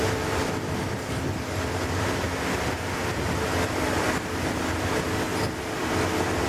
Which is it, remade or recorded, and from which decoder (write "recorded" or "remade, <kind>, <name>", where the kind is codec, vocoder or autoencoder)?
recorded